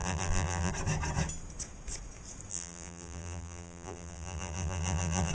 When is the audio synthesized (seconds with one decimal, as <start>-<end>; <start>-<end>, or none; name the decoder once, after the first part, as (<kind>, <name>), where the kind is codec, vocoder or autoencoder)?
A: 0.0-0.7 (vocoder, BigVGAN v2); 2.5-5.3